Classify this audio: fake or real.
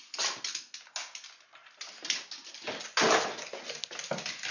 real